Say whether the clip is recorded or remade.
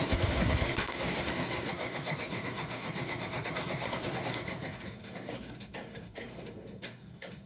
remade